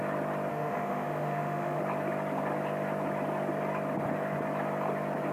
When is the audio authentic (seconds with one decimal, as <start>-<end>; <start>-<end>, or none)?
0.0-0.5; 1.8-5.3